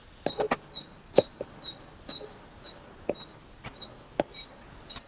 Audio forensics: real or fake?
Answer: real